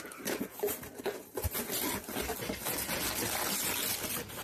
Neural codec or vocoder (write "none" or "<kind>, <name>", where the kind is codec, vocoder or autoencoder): none